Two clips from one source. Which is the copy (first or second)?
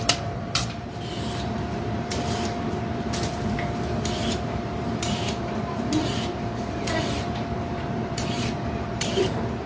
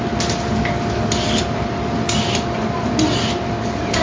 first